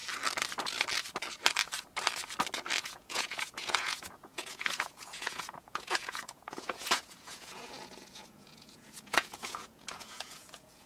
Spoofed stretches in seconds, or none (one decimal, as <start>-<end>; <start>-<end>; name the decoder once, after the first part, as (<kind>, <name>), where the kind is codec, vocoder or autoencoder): 2.8-10.9 (vocoder, Vocos)